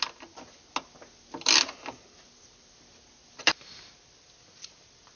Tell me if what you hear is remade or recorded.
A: recorded